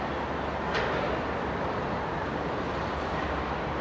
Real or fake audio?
real